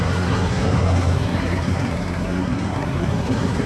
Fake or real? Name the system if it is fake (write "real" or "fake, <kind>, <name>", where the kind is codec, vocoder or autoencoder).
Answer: fake, codec, SNAC